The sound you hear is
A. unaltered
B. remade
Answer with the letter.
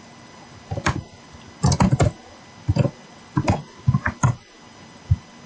A